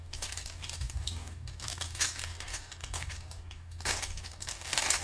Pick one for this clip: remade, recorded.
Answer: remade